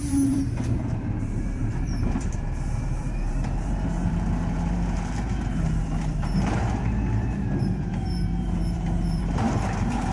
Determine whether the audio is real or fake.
fake